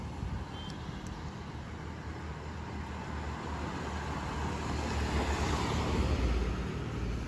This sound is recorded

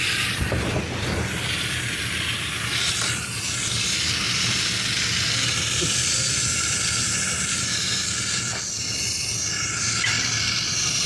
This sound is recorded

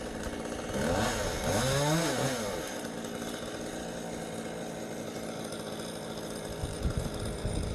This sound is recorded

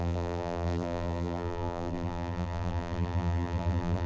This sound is remade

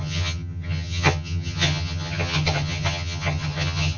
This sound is remade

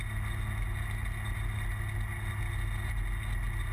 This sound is recorded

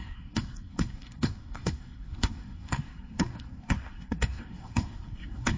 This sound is remade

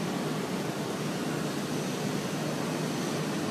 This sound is recorded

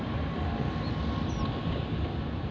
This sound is recorded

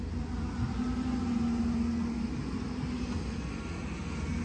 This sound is recorded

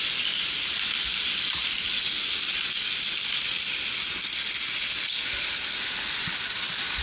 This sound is recorded